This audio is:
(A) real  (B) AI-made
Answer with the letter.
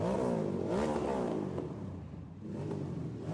A